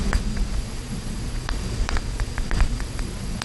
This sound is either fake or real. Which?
fake